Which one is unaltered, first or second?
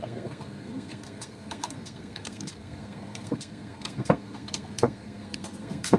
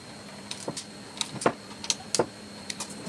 second